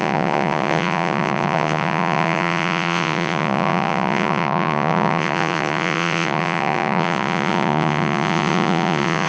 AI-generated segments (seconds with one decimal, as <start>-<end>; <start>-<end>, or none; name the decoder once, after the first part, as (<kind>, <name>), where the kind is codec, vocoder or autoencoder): 0.0-9.3 (vocoder, Vocos)